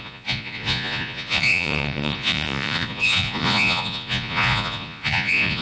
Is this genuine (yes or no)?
no